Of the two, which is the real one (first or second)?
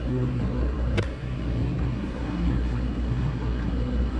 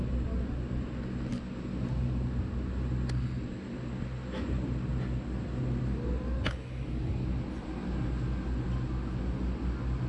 second